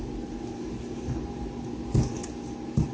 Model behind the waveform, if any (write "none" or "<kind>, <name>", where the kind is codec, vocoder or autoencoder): none